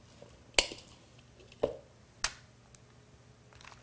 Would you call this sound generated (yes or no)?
no